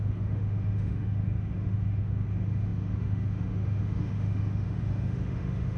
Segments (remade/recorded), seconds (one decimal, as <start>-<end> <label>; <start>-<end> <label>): 0.0-5.8 remade